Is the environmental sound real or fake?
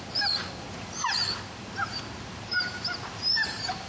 real